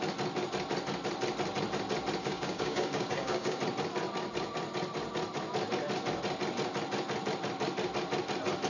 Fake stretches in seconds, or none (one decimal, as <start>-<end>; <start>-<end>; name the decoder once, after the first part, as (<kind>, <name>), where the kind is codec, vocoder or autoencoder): 2.2-3.6 (codec, DAC)